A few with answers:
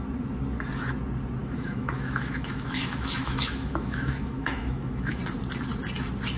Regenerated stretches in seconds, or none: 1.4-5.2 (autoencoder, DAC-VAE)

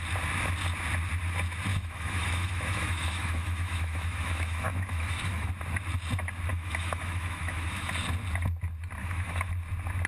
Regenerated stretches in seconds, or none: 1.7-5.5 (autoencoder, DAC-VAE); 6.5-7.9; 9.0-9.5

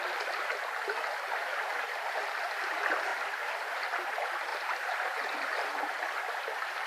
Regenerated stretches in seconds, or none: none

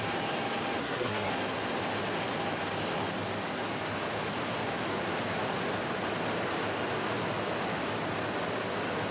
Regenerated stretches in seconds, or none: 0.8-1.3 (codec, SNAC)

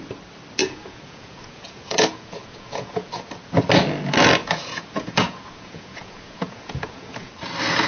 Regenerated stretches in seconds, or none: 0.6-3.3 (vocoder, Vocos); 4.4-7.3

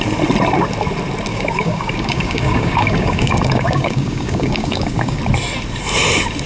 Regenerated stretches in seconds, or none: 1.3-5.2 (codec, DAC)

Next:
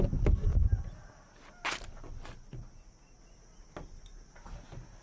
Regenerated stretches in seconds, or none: none